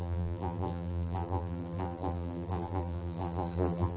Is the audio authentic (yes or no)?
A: no